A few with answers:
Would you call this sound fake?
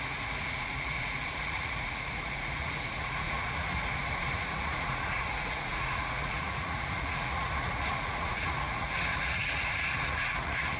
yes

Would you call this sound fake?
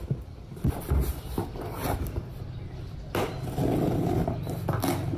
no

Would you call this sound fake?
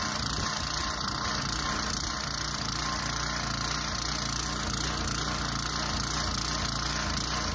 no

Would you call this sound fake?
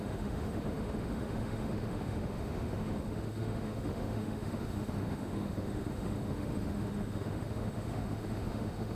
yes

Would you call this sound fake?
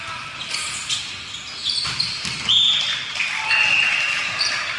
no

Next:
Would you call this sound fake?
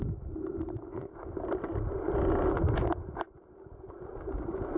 no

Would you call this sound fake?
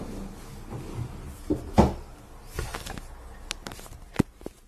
no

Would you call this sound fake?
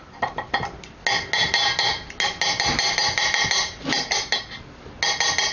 no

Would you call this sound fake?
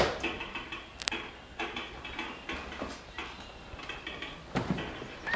no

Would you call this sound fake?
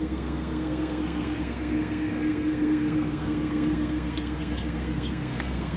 yes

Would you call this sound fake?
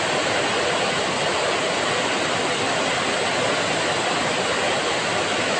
no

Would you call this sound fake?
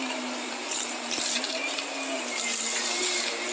yes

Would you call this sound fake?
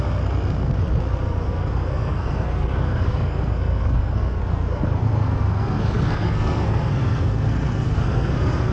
yes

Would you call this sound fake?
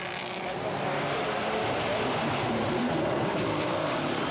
no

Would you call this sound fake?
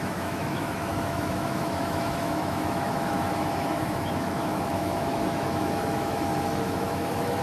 yes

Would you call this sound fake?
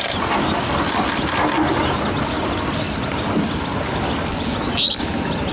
no